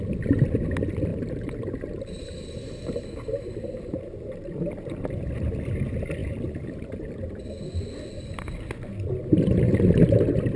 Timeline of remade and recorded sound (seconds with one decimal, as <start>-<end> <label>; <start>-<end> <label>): 0.0-1.1 recorded; 1.1-5.3 remade; 5.3-6.2 recorded; 6.2-7.4 remade; 7.4-10.6 recorded